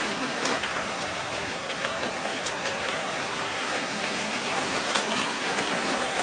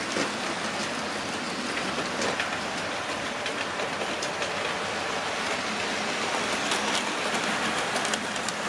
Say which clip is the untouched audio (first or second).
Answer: second